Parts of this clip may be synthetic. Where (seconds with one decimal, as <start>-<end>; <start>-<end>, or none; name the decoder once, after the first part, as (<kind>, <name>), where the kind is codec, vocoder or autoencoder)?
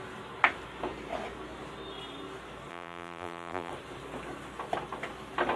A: 2.7-3.7 (vocoder, BigVGAN v2)